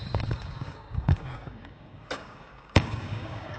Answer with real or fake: fake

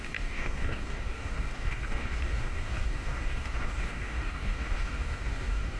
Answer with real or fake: fake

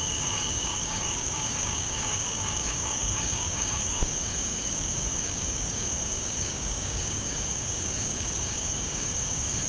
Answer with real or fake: fake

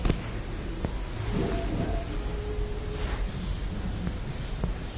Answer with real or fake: real